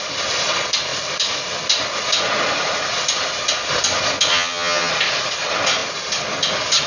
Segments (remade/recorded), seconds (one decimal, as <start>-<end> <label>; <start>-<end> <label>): 0.0-4.3 recorded; 4.3-4.9 remade; 4.9-6.9 recorded